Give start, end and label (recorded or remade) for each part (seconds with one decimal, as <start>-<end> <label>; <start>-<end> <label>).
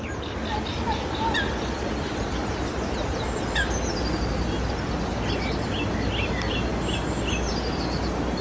0.0-0.7 recorded; 0.7-3.9 remade; 3.9-8.4 recorded